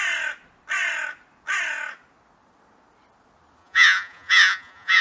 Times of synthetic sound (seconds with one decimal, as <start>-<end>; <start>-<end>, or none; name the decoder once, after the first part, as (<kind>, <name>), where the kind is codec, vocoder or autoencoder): 3.6-5.0 (vocoder, Vocos)